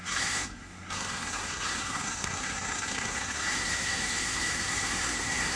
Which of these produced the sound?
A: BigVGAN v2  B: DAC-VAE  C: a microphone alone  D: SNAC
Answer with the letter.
D